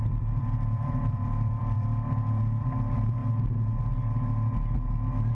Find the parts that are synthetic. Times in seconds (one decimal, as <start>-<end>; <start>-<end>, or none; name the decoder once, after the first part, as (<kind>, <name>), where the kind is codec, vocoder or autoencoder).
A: 0.0-1.9 (vocoder, BigVGAN v2); 2.6-3.2